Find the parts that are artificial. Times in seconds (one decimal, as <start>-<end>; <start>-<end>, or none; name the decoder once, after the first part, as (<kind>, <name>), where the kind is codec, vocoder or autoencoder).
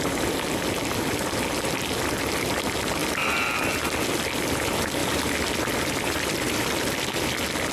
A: 3.0-4.1 (vocoder, BigVGAN v2); 5.0-7.1